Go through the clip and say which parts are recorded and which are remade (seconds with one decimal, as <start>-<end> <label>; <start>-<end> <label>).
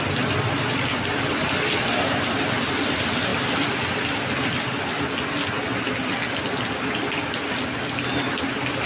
0.0-8.9 recorded